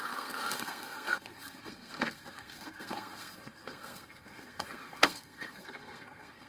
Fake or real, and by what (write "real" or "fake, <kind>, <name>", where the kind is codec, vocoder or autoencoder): fake, codec, SNAC